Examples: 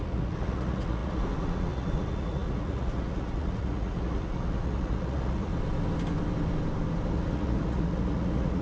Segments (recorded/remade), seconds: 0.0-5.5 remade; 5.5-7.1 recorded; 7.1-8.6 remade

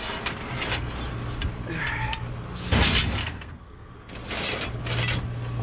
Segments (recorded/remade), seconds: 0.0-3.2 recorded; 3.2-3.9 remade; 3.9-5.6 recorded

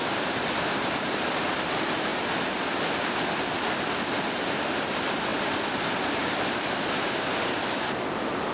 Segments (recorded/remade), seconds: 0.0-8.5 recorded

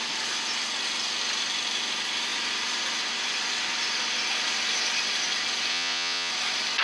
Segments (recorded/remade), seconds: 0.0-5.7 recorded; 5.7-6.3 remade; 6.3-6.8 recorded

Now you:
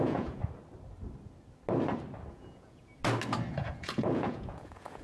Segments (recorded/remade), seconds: 0.0-0.4 remade; 0.4-2.3 recorded; 2.3-3.0 remade; 3.0-3.5 recorded; 3.5-5.0 remade

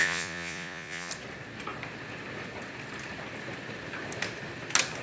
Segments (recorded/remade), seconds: 0.0-1.1 remade; 1.1-5.0 recorded